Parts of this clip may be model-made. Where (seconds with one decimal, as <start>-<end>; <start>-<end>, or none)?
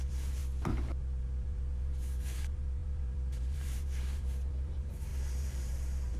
0.0-0.4; 1.0-6.2